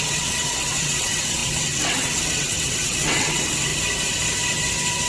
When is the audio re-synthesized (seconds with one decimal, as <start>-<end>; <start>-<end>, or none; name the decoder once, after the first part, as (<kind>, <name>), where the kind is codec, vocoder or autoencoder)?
0.0-3.7 (vocoder, WaveNeXt)